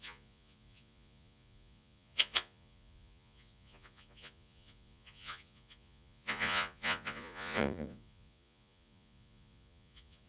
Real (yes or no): no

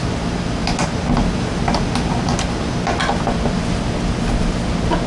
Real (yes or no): yes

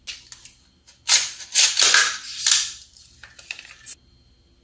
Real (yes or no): yes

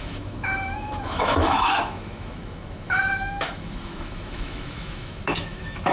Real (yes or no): no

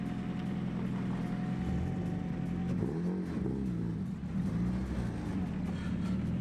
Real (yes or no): yes